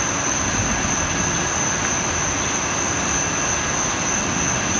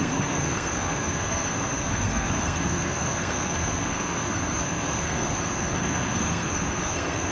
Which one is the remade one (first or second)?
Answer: second